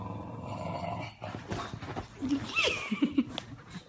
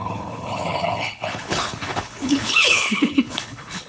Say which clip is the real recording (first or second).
first